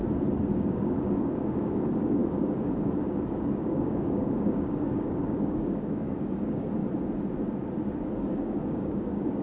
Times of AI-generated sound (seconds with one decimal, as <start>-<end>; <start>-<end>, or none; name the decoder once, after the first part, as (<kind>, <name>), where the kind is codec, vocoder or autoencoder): 0.6-6.8 (codec, DAC); 8.2-9.4